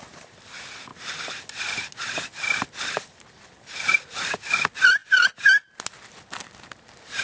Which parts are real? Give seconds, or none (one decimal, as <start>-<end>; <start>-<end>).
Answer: 0.0-7.2